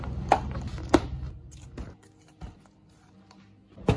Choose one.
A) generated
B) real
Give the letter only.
B